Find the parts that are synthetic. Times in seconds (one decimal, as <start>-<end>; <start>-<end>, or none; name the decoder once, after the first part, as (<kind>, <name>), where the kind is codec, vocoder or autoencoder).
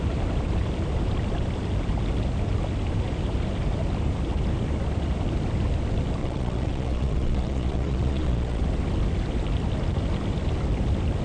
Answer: 6.2-8.6 (vocoder, Vocos)